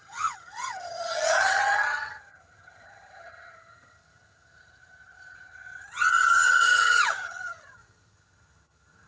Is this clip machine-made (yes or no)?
yes